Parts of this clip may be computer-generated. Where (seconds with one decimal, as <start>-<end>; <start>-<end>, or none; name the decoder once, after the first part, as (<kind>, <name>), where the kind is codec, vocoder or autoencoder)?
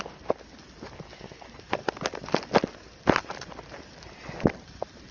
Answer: none